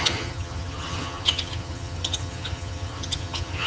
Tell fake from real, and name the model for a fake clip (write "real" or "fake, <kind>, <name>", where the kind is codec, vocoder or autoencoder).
fake, vocoder, HiFi-GAN